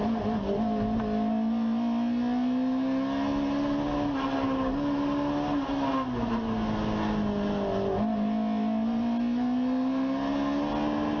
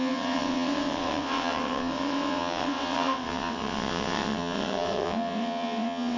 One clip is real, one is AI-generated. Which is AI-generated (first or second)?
second